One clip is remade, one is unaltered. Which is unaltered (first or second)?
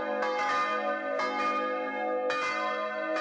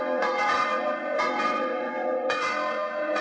first